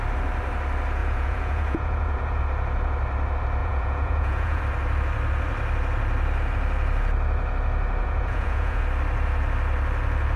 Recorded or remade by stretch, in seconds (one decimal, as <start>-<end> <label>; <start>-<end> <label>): 0.0-1.0 recorded; 1.0-2.4 remade; 2.4-3.6 recorded; 3.6-4.6 remade; 4.6-8.0 recorded; 8.0-8.8 remade; 8.8-10.4 recorded